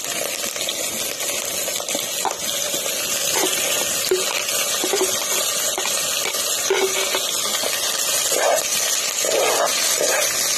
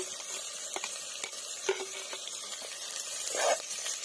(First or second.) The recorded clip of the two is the first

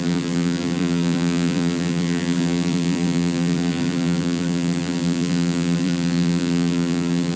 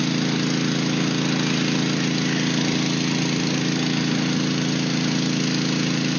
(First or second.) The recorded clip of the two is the second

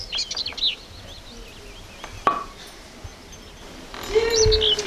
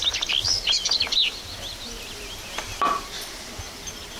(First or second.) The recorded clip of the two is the first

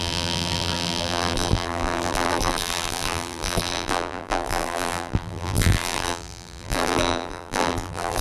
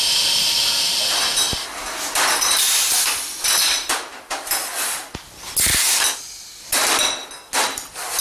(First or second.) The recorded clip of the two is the second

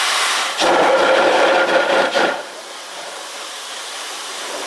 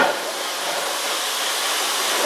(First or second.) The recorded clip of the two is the second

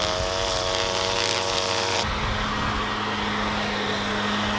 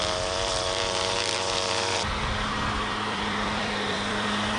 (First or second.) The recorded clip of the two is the first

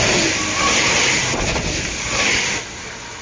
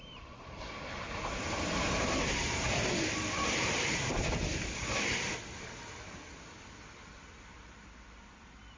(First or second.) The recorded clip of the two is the first